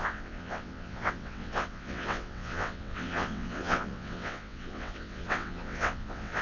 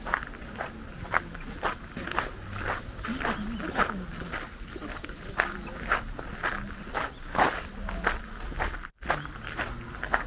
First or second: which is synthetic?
first